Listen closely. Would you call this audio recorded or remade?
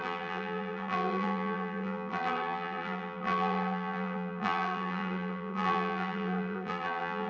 remade